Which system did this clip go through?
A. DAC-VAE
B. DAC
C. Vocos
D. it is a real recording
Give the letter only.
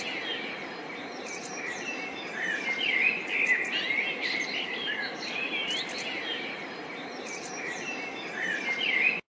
D